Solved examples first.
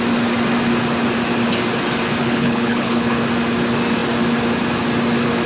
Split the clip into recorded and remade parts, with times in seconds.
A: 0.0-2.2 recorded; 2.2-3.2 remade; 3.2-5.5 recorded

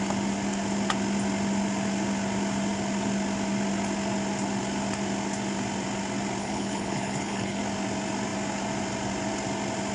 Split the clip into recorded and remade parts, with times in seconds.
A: 0.0-6.4 recorded; 6.4-7.6 remade; 7.6-9.9 recorded

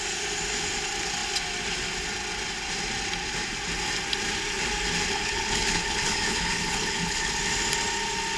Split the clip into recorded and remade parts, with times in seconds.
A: 0.0-5.1 recorded; 5.1-7.3 remade; 7.3-8.4 recorded